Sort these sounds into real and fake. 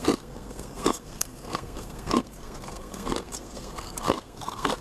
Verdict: fake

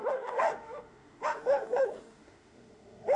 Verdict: fake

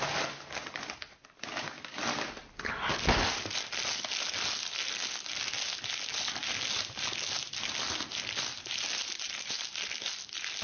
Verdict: real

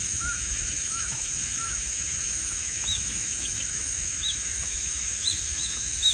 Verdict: fake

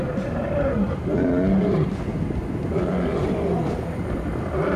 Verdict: real